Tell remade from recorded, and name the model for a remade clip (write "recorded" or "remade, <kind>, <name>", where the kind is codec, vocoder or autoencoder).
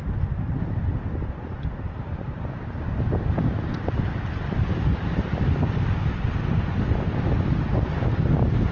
remade, vocoder, BigVGAN v2